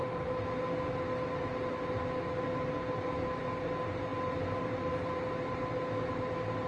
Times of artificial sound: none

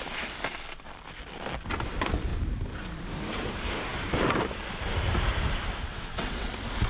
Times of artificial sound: 5.9-6.5 (vocoder, WaveNeXt)